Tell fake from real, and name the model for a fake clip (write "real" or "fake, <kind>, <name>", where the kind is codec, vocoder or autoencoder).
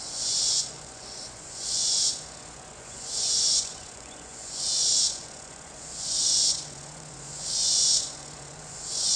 fake, vocoder, Vocos